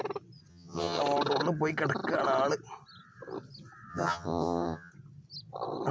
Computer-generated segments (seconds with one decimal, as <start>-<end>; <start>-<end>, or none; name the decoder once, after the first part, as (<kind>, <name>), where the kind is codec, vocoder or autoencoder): 0.5-1.0 (vocoder, HiFi-GAN); 3.9-4.9